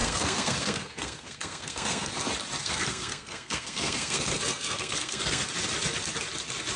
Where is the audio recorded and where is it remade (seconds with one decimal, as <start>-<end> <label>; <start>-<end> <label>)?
0.0-2.1 remade; 2.1-2.6 recorded; 2.6-5.4 remade; 5.4-6.8 recorded

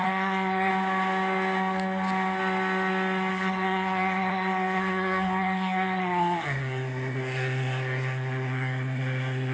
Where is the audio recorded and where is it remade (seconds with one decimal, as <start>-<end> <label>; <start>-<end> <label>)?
0.0-0.7 remade; 0.7-3.3 recorded; 3.3-9.5 remade